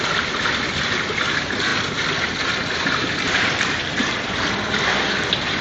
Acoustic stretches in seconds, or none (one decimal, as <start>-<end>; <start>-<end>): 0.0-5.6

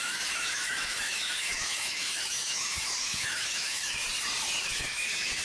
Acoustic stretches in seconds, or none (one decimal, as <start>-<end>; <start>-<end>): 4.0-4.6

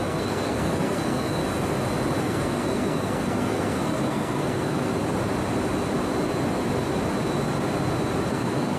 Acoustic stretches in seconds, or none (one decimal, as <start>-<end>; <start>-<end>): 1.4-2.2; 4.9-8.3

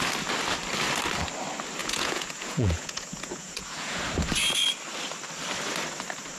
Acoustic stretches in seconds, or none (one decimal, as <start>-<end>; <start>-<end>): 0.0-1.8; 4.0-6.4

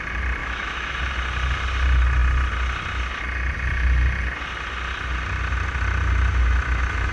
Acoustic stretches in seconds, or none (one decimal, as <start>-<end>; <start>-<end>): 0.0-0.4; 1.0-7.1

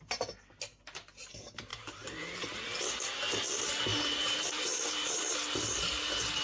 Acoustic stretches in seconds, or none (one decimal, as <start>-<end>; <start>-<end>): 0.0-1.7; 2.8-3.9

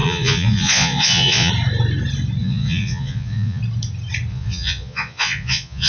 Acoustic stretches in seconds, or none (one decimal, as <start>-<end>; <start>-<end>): 1.5-2.4; 3.6-4.3